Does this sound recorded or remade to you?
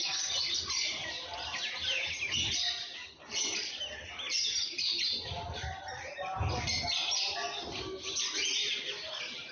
recorded